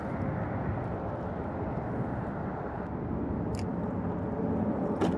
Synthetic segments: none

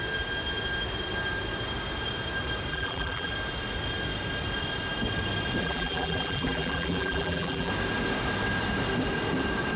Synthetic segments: 2.7-3.3 (vocoder, BigVGAN v2); 5.6-7.7

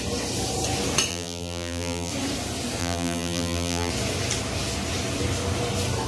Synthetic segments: 1.1-2.1 (vocoder, BigVGAN v2); 2.8-3.9

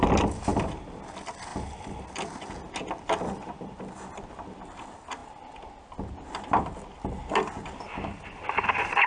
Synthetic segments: none

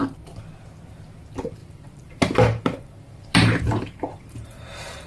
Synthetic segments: 1.6-5.1 (vocoder, BigVGAN v2)

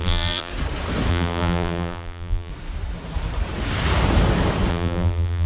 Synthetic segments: 0.0-0.5 (vocoder, BigVGAN v2); 1.1-2.5; 4.7-5.5

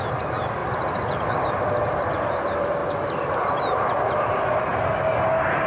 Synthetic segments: 0.0-0.6 (vocoder, BigVGAN v2); 2.0-4.7